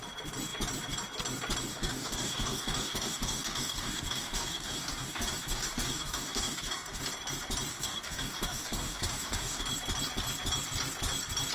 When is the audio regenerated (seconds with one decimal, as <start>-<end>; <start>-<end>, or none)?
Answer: 1.7-7.0; 7.7-9.6